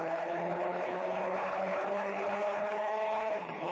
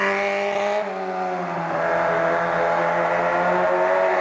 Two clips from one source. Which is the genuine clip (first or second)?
second